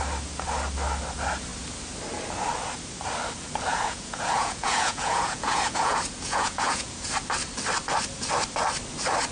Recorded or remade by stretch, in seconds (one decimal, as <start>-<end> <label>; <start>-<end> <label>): 0.0-3.7 recorded; 3.7-6.9 remade; 6.9-9.3 recorded